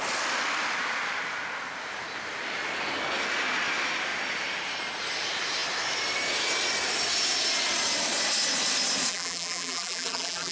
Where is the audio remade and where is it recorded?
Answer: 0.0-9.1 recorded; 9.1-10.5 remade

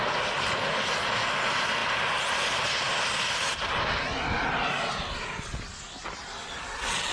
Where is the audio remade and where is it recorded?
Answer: 0.0-7.1 recorded